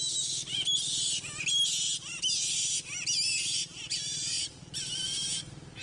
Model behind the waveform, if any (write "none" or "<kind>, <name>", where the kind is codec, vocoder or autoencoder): none